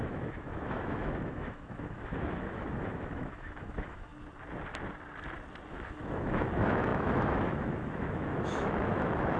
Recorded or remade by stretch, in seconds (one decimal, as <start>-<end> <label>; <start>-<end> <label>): 0.0-4.1 remade; 4.1-5.7 recorded; 5.7-9.4 remade